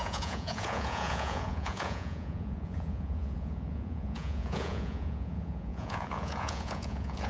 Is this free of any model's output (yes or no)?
no